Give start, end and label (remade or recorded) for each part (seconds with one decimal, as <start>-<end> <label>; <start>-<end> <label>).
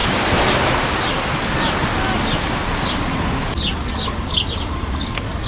0.0-5.5 recorded